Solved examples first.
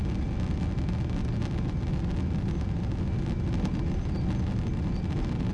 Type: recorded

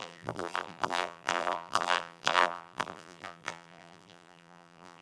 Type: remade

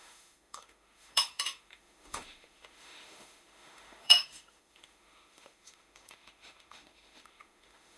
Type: remade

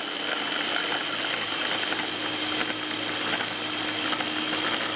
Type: recorded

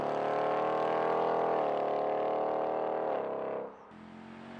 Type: recorded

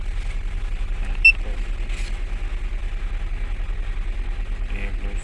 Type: recorded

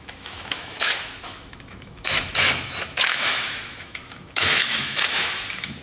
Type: remade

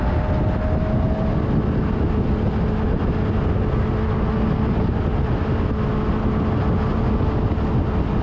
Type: recorded